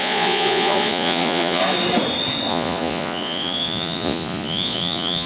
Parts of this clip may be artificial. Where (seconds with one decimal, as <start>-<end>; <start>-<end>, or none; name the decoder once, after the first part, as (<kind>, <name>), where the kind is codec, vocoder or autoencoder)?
0.0-1.6 (vocoder, Vocos); 2.5-5.3